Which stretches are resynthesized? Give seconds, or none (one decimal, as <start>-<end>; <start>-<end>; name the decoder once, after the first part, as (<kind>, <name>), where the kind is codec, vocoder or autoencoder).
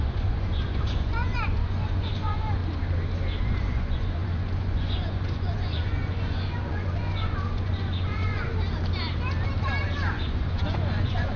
0.0-2.6 (vocoder, Vocos); 3.4-8.5; 10.1-11.4